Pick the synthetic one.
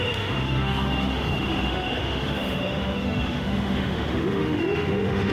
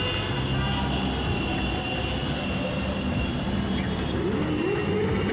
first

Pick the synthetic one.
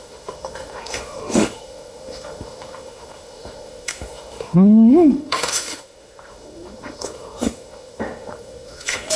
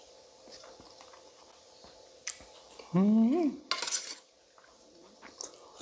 first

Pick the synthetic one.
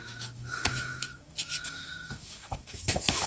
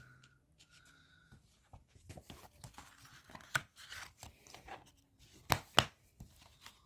first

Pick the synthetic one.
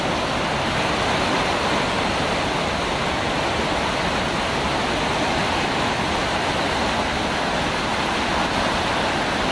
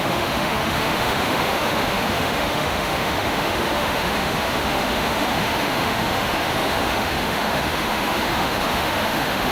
second